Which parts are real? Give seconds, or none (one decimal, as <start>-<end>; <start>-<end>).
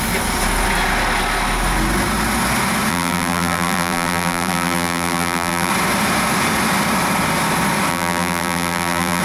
0.0-2.9; 5.7-7.9